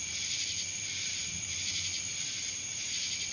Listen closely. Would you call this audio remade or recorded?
recorded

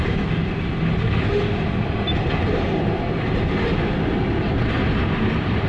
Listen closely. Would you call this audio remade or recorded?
recorded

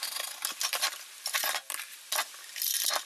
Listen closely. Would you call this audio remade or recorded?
recorded